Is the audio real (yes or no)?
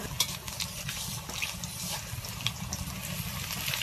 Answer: yes